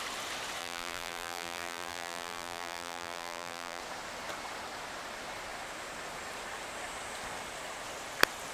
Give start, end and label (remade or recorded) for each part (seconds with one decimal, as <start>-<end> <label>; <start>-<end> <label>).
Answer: 0.0-0.6 recorded; 0.6-3.8 remade; 3.8-8.5 recorded